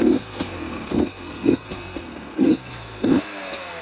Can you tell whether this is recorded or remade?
remade